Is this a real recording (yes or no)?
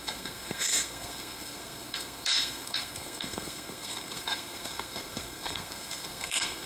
no